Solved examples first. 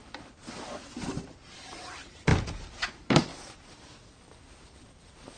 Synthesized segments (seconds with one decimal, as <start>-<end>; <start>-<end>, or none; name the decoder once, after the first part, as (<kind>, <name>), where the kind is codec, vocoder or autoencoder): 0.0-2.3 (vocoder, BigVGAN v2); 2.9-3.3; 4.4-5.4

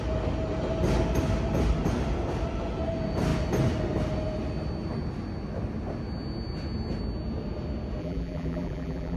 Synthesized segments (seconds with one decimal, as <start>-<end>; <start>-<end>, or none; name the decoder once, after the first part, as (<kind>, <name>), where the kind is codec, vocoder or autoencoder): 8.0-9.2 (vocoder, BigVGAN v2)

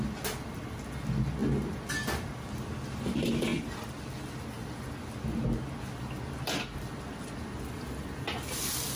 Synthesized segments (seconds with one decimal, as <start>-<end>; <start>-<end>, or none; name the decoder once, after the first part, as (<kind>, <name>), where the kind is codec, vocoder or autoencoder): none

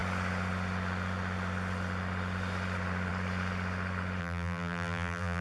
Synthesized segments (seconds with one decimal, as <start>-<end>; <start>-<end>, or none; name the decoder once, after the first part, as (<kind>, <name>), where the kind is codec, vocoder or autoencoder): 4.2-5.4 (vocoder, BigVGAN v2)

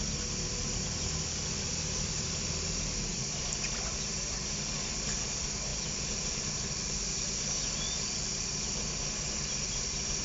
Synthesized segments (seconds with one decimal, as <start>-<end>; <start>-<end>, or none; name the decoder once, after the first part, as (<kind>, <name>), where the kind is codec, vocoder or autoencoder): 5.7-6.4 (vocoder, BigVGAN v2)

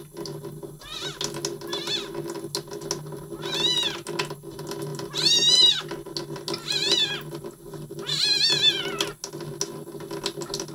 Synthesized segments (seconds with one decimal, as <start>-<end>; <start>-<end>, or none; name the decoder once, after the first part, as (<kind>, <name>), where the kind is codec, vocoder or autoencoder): 3.7-4.2 (vocoder, BigVGAN v2)

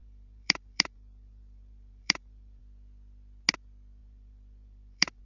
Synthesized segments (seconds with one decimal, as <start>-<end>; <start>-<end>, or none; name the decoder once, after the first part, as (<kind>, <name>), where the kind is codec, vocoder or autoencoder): 0.0-2.6 (vocoder, BigVGAN v2); 4.0-5.2

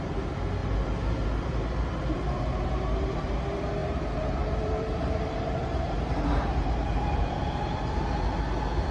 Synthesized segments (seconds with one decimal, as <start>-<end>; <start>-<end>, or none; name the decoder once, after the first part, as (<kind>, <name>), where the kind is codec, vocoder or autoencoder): 0.6-3.1 (vocoder, BigVGAN v2); 3.8-7.4